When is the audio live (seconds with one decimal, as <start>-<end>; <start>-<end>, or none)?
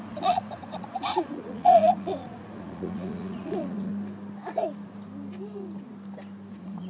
3.9-6.5